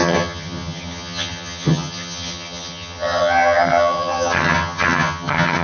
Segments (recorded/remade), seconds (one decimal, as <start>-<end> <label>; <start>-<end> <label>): 0.0-5.6 remade